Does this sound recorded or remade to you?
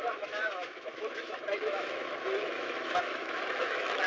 remade